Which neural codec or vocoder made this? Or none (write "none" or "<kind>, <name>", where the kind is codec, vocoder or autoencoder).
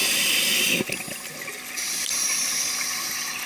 none